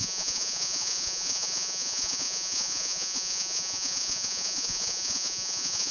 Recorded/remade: remade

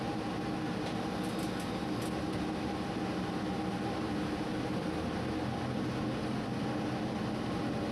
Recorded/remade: recorded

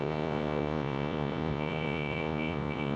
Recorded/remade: remade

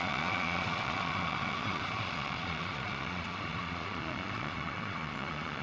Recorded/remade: remade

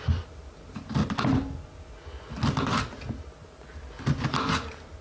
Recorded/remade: recorded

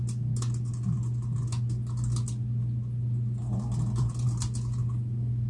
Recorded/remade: recorded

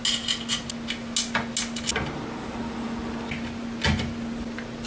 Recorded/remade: recorded